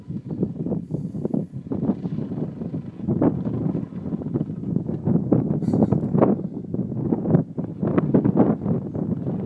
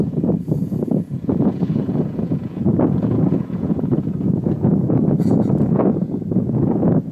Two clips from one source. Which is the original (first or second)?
first